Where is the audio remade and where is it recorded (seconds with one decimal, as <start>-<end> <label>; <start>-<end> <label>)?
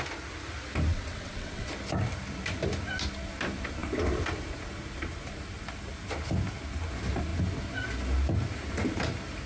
0.0-0.9 recorded; 0.9-1.6 remade; 1.6-9.5 recorded